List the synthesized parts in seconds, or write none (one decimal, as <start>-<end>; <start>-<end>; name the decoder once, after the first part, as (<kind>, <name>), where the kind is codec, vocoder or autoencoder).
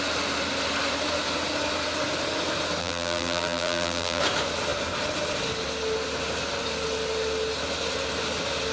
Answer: 2.8-4.2 (vocoder, BigVGAN v2)